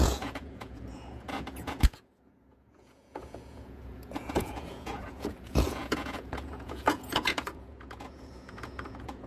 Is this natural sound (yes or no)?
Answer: no